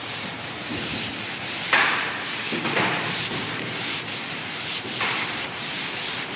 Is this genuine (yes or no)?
no